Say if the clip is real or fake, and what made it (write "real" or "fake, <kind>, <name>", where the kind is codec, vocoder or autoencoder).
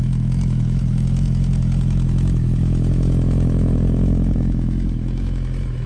fake, autoencoder, DAC-VAE